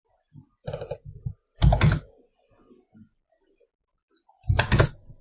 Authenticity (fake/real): real